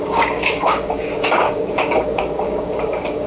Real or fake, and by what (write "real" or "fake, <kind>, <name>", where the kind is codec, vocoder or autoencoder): fake, codec, DAC